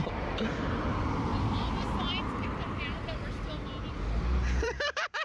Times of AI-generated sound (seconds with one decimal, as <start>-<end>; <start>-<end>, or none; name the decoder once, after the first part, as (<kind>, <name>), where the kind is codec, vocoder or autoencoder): 0.0-1.3 (vocoder, BigVGAN v2); 4.2-5.2